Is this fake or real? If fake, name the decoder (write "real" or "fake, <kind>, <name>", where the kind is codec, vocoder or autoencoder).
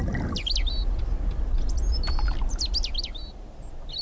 real